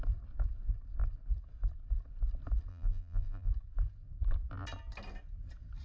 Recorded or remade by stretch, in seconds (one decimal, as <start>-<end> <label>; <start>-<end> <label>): 0.0-2.7 recorded; 2.7-3.5 remade; 3.5-5.8 recorded